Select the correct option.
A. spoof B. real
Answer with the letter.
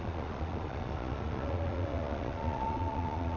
A